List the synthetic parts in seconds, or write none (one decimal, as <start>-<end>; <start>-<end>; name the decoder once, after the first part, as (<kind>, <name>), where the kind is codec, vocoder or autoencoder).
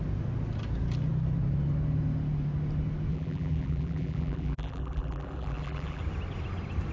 3.1-6.0 (vocoder, BigVGAN v2)